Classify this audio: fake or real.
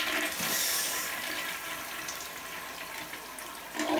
real